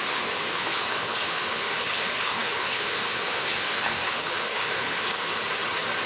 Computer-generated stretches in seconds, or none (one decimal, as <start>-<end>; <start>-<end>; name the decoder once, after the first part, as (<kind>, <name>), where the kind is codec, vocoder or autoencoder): 0.0-5.3 (codec, HILCodec)